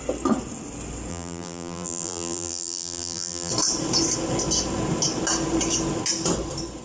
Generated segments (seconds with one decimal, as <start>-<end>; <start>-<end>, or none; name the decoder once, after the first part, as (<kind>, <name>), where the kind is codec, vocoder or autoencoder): 1.1-3.5 (vocoder, BigVGAN v2)